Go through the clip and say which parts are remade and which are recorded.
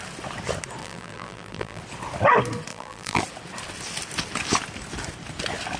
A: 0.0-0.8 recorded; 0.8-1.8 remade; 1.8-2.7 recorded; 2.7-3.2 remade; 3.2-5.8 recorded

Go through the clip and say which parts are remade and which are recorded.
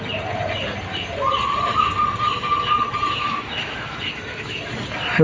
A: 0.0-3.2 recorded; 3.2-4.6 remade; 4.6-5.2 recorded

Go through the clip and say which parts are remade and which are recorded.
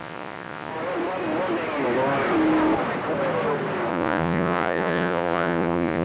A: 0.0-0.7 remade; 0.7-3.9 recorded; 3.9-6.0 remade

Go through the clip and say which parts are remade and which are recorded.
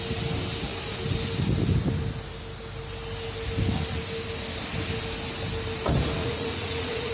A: 0.0-6.2 recorded; 6.2-7.1 remade